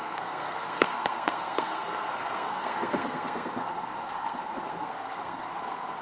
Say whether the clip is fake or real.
fake